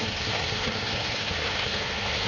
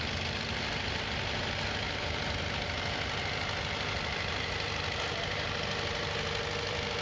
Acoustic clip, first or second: second